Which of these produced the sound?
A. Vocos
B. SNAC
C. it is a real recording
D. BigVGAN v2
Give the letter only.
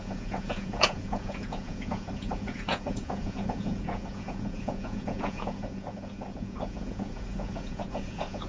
A